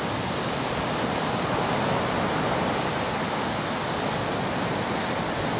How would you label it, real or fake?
real